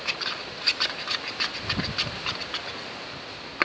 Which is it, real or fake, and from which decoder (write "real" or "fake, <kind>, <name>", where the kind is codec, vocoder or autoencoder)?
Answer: real